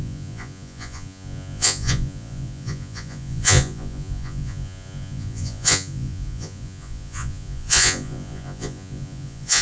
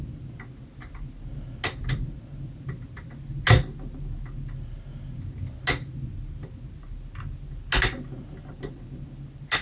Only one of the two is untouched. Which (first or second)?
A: second